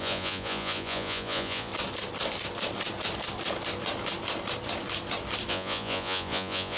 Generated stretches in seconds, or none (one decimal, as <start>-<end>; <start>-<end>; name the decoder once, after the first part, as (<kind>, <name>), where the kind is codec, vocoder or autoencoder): 0.0-1.7 (vocoder, Vocos); 5.5-6.8